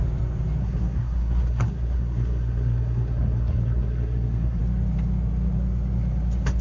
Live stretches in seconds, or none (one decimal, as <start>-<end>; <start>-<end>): 0.0-0.6; 4.6-6.6